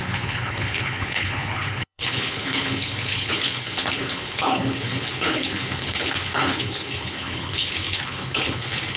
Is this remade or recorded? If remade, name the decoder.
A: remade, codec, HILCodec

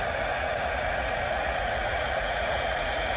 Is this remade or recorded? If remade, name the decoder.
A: remade, vocoder, Vocos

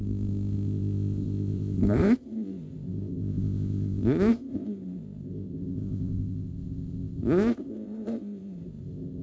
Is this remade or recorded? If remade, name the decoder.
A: remade, codec, ZipCodec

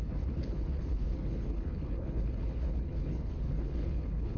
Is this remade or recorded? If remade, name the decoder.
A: remade, codec, HILCodec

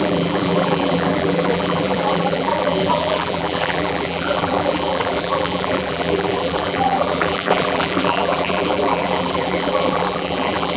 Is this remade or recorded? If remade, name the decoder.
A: remade, vocoder, BigVGAN v2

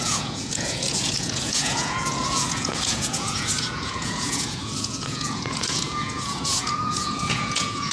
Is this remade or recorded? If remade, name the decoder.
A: remade, vocoder, Vocos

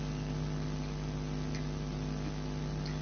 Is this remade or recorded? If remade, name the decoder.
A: recorded